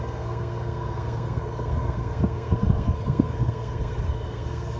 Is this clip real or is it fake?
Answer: fake